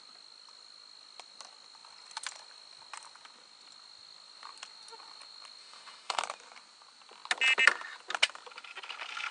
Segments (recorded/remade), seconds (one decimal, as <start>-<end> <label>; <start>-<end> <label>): 0.0-5.6 recorded; 5.6-6.2 remade; 6.2-9.3 recorded